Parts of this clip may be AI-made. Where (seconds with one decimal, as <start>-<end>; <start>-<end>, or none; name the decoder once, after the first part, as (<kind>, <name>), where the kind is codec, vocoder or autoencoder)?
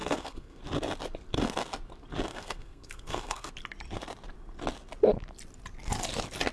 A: 0.0-0.6 (codec, SNAC); 2.3-3.5